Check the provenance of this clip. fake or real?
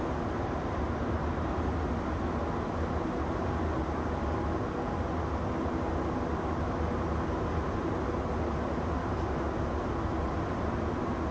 real